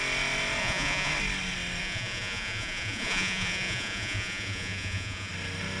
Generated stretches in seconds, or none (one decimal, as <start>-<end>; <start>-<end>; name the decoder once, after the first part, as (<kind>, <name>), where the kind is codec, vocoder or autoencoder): 0.6-1.1 (vocoder, Vocos); 1.8-5.3